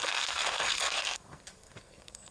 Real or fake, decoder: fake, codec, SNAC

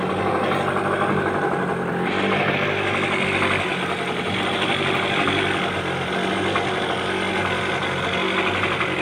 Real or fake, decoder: real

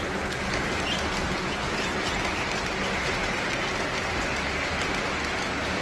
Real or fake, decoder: real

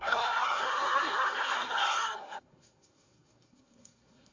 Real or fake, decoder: fake, codec, SNAC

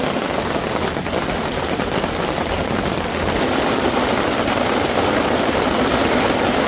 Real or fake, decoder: real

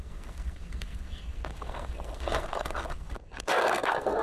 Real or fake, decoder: fake, codec, SNAC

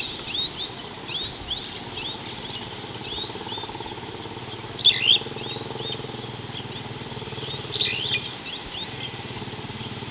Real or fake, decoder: real